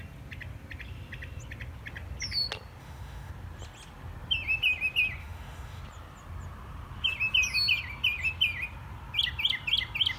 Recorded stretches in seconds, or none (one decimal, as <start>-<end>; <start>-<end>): 0.0-2.8; 3.3-5.2; 5.8-10.2

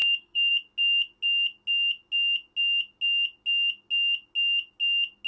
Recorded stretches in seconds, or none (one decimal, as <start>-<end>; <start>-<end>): 0.5-5.3

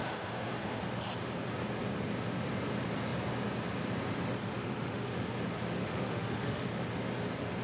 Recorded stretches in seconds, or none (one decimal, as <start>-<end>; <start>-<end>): 0.8-4.4; 5.3-5.8; 6.8-7.6

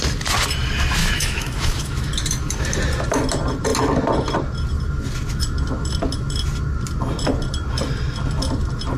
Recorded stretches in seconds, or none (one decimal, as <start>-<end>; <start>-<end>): 0.0-1.0; 2.1-9.0

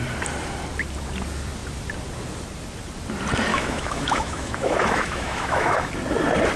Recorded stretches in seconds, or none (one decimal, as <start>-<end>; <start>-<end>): 0.0-3.5; 5.9-6.6

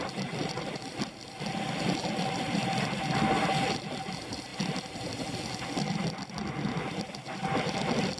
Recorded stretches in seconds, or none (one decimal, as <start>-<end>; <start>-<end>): 0.0-8.2

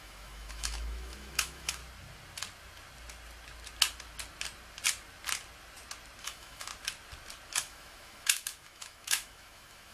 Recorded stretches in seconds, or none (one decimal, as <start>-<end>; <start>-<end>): 1.8-6.2; 6.7-7.5

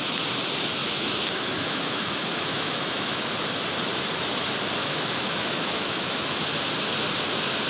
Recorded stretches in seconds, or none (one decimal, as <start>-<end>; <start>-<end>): 0.0-0.8; 3.3-4.8; 6.4-7.7